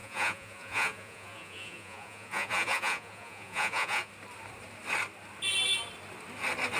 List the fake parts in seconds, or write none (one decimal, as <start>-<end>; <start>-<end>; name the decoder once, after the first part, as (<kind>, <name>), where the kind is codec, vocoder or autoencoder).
0.0-4.1 (vocoder, Vocos)